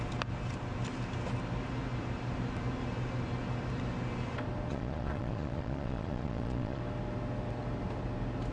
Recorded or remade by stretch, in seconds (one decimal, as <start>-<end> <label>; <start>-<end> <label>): 0.0-4.7 recorded; 4.7-6.8 remade; 6.8-8.5 recorded